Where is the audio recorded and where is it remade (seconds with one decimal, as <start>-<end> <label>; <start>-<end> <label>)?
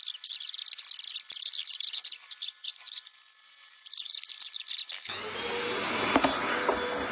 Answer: 0.0-1.6 recorded; 1.6-3.5 remade; 3.5-7.1 recorded